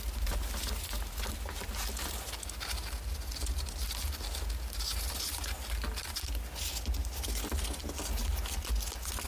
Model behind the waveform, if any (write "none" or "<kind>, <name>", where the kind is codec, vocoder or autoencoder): none